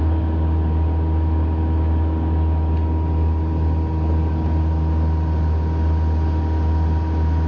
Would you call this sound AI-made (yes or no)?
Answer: no